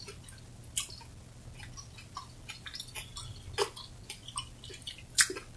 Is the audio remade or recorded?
recorded